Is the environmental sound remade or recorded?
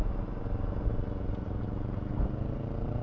recorded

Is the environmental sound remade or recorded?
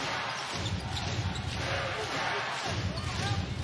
recorded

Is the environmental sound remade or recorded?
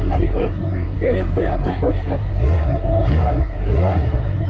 remade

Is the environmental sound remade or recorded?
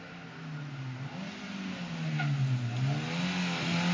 recorded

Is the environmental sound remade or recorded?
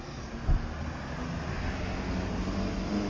recorded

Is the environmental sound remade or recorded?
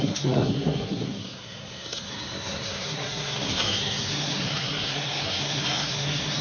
remade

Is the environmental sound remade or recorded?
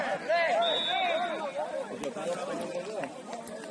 recorded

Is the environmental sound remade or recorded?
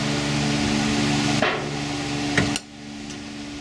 recorded